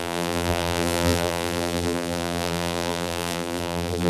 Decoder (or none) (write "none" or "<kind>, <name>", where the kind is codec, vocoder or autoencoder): vocoder, BigVGAN v2